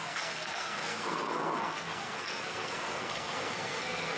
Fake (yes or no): yes